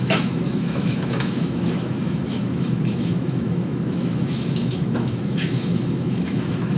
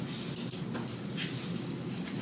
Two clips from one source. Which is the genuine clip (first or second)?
second